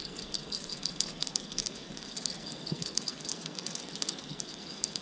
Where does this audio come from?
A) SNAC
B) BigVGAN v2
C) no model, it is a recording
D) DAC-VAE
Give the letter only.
A